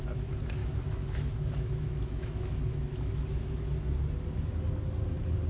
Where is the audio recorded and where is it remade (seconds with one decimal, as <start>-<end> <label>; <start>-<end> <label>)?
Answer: 0.0-0.6 recorded; 0.6-3.9 remade; 3.9-5.5 recorded